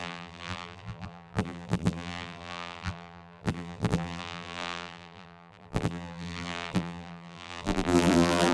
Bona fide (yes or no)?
no